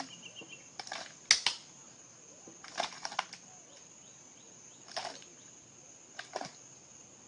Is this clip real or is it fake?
real